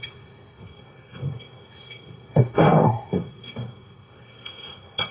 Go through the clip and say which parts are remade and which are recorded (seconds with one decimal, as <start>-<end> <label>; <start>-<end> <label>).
0.0-5.1 remade